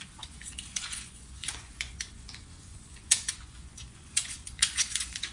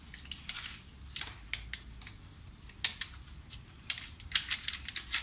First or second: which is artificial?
first